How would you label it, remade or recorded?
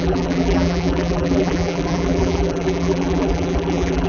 remade